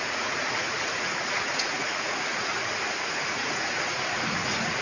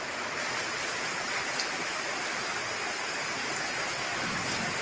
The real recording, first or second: second